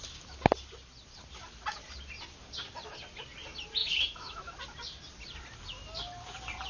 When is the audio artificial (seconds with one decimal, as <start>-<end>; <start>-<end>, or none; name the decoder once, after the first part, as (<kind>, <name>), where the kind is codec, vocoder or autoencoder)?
3.8-4.5 (autoencoder, DAC-VAE)